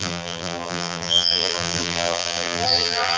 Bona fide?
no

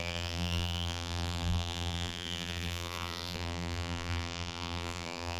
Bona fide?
no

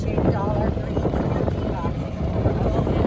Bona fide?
yes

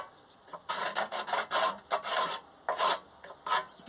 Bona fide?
yes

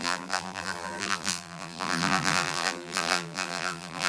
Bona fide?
no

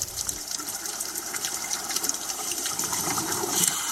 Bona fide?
no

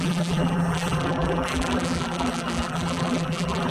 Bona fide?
no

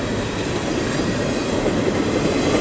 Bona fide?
yes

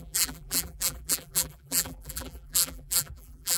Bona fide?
no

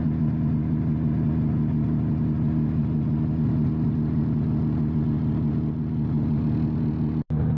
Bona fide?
yes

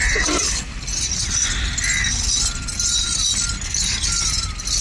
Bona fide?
yes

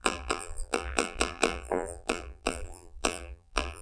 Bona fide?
no